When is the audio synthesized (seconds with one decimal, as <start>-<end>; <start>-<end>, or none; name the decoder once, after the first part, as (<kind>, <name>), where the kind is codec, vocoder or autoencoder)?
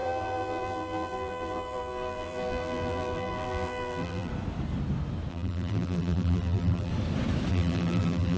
0.0-4.3 (vocoder, BigVGAN v2); 5.3-6.9; 7.5-8.4